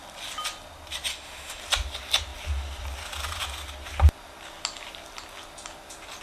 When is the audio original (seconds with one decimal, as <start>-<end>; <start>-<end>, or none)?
0.0-1.1; 1.6-6.2